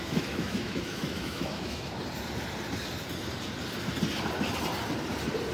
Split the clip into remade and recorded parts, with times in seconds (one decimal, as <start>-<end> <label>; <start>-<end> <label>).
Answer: 0.0-2.0 remade; 2.0-5.5 recorded